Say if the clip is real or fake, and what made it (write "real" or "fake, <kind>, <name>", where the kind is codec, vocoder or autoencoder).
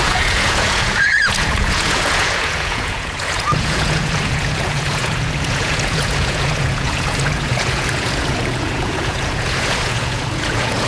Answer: fake, vocoder, Vocos